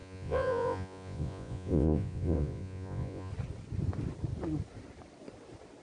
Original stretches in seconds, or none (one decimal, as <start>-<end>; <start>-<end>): 3.3-5.8